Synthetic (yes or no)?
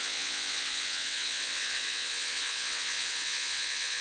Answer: yes